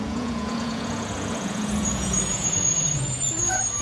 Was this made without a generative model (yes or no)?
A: no